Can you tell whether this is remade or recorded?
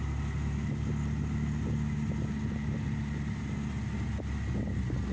recorded